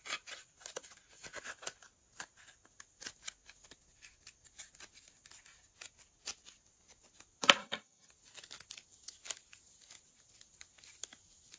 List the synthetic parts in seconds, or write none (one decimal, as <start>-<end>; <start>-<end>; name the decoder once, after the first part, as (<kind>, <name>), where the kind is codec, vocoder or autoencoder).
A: 7.6-8.1 (vocoder, HiFi-GAN)